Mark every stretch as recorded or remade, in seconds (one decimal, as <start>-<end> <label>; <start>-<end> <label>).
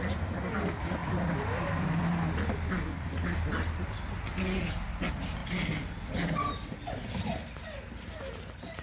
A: 0.0-8.8 recorded